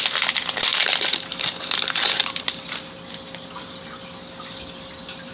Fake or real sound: real